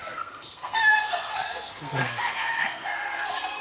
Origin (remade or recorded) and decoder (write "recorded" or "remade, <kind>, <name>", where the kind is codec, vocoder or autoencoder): remade, codec, SNAC